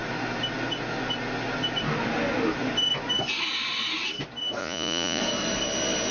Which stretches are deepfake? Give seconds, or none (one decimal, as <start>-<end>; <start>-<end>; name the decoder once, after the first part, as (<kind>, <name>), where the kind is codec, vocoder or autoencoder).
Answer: 4.6-5.2 (vocoder, Vocos)